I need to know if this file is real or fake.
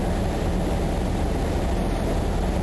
real